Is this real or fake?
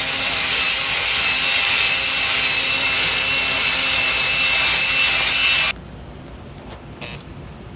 real